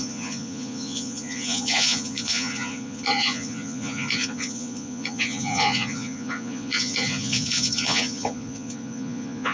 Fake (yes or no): yes